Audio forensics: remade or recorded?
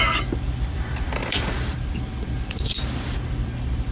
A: remade